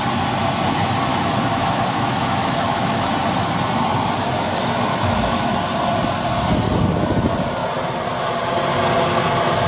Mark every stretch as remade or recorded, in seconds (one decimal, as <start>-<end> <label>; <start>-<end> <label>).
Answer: 0.0-1.1 recorded; 1.1-3.1 remade; 3.1-4.9 recorded; 4.9-5.5 remade; 5.5-9.7 recorded